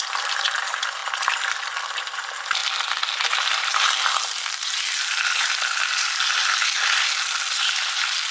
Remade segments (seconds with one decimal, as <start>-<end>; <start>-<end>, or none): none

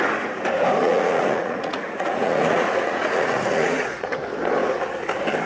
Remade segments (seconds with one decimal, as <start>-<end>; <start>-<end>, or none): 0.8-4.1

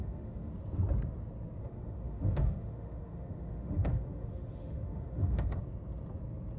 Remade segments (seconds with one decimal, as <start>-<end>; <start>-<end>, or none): 0.0-0.5; 1.6-5.6